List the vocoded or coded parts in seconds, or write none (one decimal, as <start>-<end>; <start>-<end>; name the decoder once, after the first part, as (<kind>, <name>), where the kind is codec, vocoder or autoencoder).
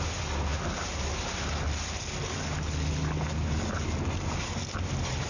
none